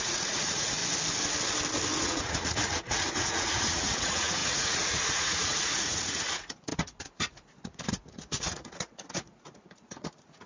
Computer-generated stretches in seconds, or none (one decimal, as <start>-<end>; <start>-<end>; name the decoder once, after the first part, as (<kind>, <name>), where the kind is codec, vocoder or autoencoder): 0.0-0.8 (vocoder, Vocos); 2.0-10.5